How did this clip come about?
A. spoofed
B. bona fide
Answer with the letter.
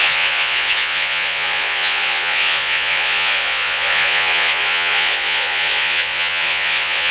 A